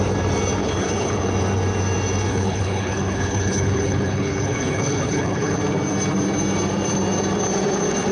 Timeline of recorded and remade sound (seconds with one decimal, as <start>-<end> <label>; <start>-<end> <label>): 0.0-0.6 recorded; 0.6-1.3 remade; 1.3-2.3 recorded; 2.3-5.6 remade; 5.6-8.1 recorded